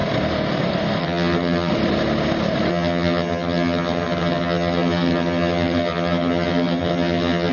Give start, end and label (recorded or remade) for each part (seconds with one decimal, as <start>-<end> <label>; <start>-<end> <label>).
0.0-1.0 recorded; 1.0-1.7 remade; 1.7-2.7 recorded; 2.7-7.5 remade